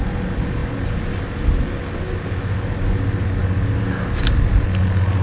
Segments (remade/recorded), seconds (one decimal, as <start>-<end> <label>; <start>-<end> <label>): 0.0-5.2 recorded

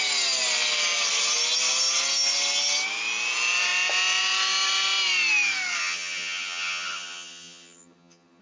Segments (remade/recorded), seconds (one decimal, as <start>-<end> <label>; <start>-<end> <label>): 0.0-5.8 recorded; 5.8-8.4 remade

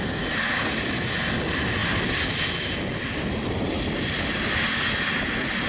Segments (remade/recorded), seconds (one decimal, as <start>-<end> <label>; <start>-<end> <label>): 0.0-5.7 recorded